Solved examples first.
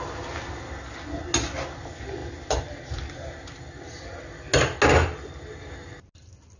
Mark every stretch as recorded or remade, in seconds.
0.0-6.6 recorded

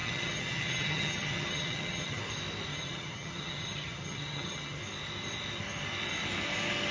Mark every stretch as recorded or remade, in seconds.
0.0-2.2 remade; 2.2-2.7 recorded; 2.7-4.8 remade; 4.8-6.9 recorded

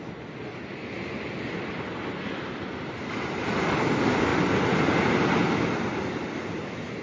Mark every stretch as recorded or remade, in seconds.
0.0-7.0 recorded